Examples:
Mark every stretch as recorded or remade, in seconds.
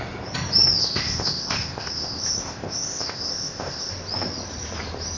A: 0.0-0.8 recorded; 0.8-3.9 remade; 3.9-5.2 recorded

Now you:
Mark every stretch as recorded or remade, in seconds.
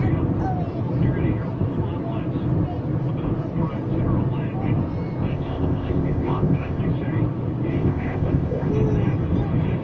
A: 0.0-5.3 recorded; 5.3-6.8 remade; 6.8-7.7 recorded; 7.7-8.7 remade; 8.7-9.8 recorded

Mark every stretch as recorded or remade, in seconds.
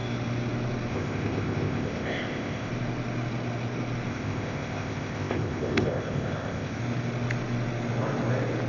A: 0.0-0.9 recorded; 0.9-2.7 remade; 2.7-4.1 recorded; 4.1-6.8 remade; 6.8-8.7 recorded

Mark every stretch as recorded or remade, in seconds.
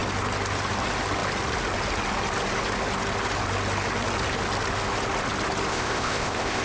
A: 0.0-5.7 recorded; 5.7-6.6 remade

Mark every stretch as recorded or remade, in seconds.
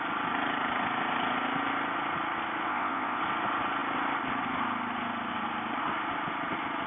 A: 0.0-2.7 recorded; 2.7-3.2 remade; 3.2-6.9 recorded